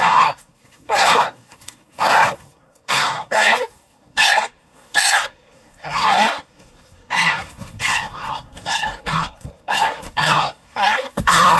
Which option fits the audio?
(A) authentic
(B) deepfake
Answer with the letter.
B